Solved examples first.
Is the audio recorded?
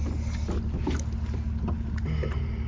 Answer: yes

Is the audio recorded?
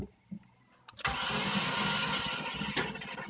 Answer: yes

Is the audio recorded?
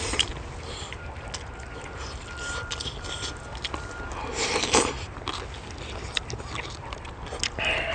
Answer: yes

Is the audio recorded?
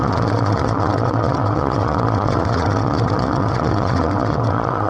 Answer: no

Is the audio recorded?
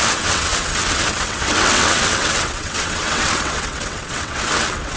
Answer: no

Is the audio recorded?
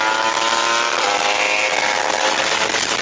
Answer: yes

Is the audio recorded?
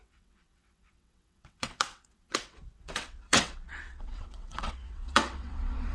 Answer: no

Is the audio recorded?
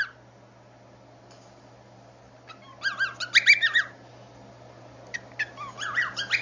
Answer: yes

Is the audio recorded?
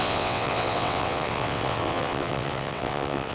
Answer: no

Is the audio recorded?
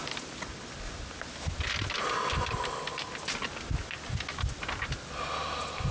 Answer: yes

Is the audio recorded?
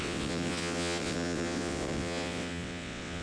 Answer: no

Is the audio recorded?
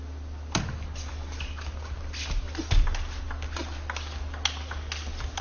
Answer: yes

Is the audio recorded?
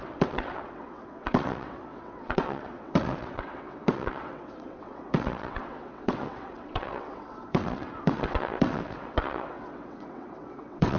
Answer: no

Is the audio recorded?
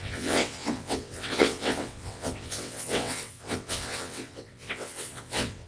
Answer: no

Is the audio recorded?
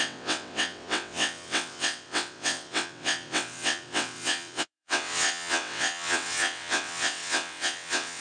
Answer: no